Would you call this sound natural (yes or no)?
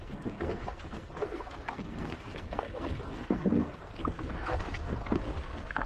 no